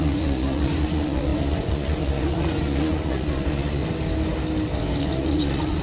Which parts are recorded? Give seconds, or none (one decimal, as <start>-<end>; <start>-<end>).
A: 3.8-5.0